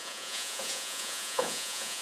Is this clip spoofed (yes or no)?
yes